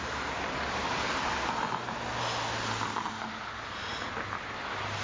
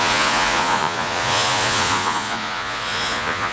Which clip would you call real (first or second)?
first